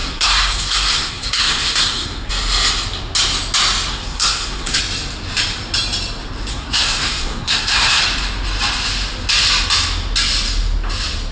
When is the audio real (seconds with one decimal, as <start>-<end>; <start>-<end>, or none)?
2.3-3.9; 4.8-6.5; 8.0-11.3